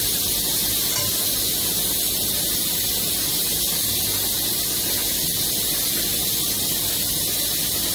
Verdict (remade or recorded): recorded